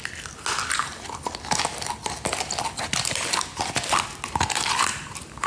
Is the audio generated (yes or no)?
no